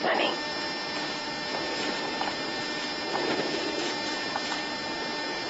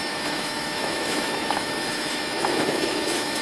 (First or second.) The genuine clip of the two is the first